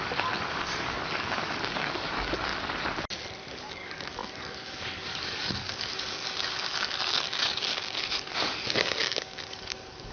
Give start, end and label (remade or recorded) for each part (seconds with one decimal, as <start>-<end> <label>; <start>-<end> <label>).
0.0-2.5 remade; 2.5-3.7 recorded; 3.7-10.1 remade